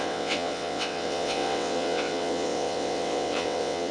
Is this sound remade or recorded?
remade